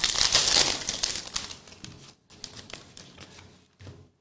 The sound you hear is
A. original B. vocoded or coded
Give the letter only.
A